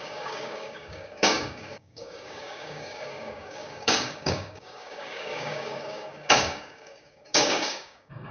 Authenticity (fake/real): fake